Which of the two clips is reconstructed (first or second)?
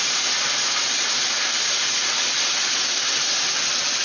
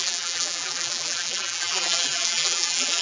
second